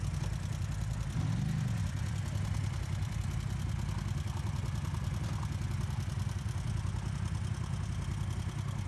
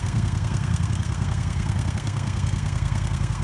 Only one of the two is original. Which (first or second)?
first